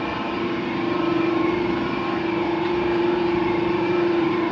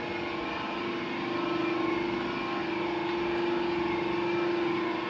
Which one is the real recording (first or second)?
second